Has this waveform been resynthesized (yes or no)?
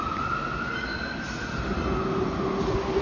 no